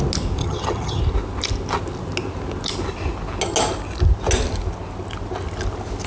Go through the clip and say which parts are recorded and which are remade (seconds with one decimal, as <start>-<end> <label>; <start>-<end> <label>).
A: 0.0-0.4 recorded; 0.4-1.0 remade; 1.0-6.1 recorded